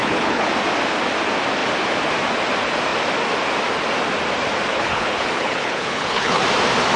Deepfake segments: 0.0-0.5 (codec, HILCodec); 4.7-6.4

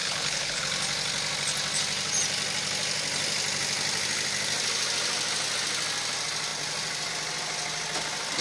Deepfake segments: 0.0-0.6 (codec, HILCodec)

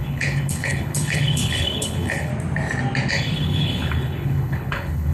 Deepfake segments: 0.0-2.3 (codec, HILCodec); 3.1-5.1

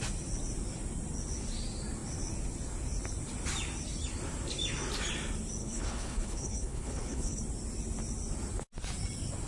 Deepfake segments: 5.6-7.4 (codec, HILCodec)

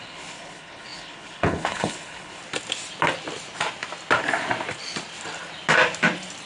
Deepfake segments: 0.0-2.4 (codec, HILCodec)

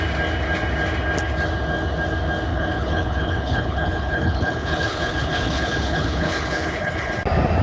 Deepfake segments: 2.5-7.1 (codec, HILCodec)

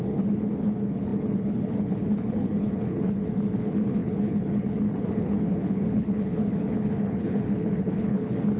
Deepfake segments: 0.0-8.6 (codec, HILCodec)